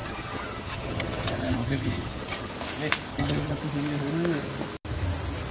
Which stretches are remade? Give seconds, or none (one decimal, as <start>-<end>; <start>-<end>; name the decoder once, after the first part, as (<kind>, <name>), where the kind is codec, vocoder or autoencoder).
0.0-2.5 (vocoder, HiFi-GAN); 3.1-3.6